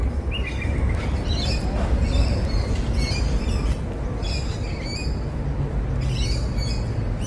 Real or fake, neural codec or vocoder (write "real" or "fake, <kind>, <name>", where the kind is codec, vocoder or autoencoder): real